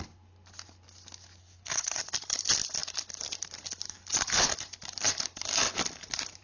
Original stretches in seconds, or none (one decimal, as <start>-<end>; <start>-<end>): 0.0-1.4; 2.0-6.4